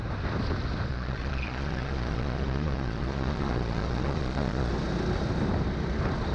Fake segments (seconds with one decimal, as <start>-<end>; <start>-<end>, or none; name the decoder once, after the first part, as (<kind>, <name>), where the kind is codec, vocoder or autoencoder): 0.9-4.7 (vocoder, Vocos)